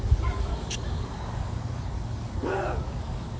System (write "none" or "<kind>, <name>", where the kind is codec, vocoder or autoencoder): codec, DAC